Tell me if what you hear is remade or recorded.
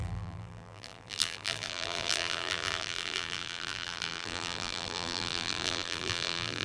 remade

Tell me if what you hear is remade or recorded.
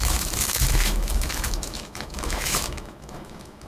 remade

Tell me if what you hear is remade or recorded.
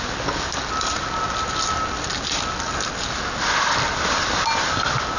recorded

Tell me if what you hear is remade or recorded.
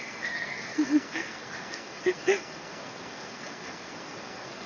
remade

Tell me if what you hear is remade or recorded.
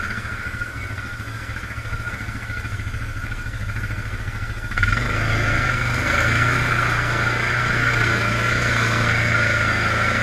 remade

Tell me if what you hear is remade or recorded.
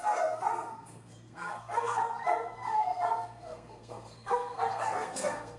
remade